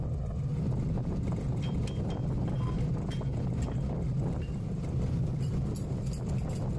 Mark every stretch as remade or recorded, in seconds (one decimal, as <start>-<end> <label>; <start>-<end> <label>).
0.0-2.2 remade; 2.2-4.7 recorded; 4.7-6.8 remade